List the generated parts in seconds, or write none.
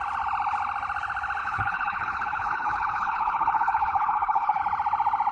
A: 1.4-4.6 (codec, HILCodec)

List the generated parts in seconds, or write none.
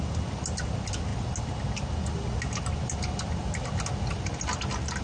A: none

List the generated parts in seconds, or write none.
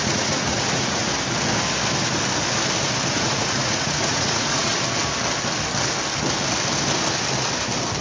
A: 0.0-1.0 (vocoder, Vocos); 3.1-4.7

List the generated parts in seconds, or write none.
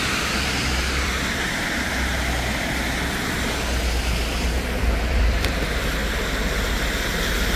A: 0.0-2.1 (vocoder, BigVGAN v2); 4.2-6.0